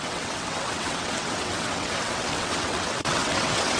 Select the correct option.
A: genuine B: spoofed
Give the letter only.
B